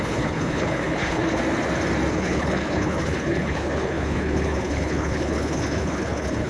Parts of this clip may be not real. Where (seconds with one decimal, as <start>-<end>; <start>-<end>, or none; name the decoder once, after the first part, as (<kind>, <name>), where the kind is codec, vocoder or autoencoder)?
0.0-1.4 (codec, HILCodec); 2.1-6.5